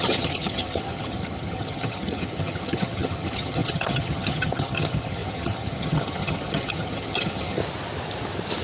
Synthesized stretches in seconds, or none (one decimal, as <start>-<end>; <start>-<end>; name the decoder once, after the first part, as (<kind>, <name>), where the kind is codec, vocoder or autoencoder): 0.0-7.6 (vocoder, HiFi-GAN)